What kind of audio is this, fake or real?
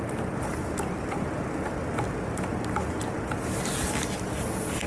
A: real